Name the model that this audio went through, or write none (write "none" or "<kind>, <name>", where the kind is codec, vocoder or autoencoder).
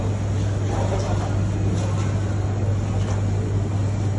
none